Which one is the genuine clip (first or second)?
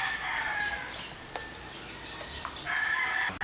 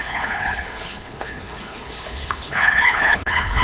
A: first